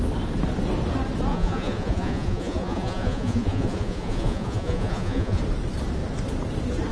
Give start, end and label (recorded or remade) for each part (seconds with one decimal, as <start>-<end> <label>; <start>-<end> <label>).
0.0-1.3 recorded; 1.3-5.4 remade; 5.4-6.9 recorded